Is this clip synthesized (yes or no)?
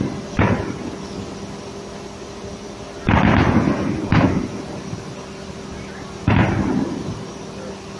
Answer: no